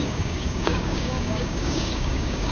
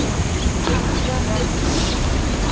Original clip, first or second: second